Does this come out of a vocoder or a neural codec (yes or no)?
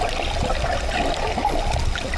no